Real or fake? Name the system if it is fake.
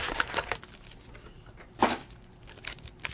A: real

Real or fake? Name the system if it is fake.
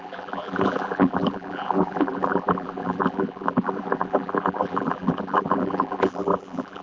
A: fake, vocoder, BigVGAN v2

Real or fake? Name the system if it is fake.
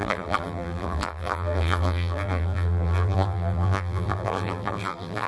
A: fake, vocoder, BigVGAN v2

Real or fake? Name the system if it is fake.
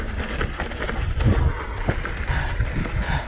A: real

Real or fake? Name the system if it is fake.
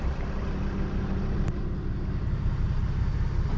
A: real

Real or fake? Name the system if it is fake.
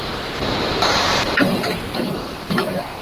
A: fake, vocoder, BigVGAN v2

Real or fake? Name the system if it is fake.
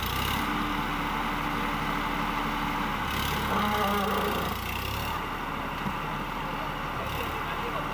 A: real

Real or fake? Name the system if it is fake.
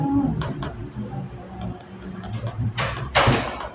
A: fake, vocoder, BigVGAN v2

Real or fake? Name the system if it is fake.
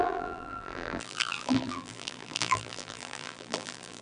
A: fake, vocoder, BigVGAN v2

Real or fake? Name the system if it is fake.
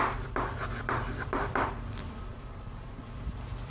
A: fake, vocoder, BigVGAN v2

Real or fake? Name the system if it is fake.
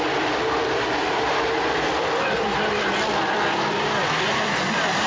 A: fake, vocoder, BigVGAN v2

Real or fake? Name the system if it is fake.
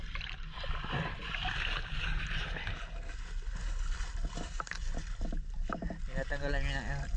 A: real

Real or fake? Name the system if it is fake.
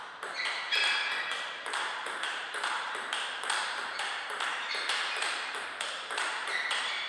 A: fake, vocoder, BigVGAN v2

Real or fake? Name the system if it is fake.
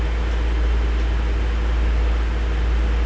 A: real